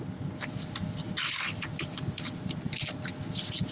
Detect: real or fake real